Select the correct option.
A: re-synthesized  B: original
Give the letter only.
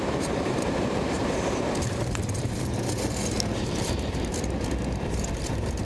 A